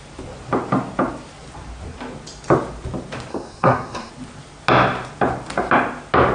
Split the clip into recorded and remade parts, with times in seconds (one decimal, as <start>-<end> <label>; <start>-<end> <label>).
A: 0.0-3.3 recorded; 3.3-4.1 remade; 4.1-6.3 recorded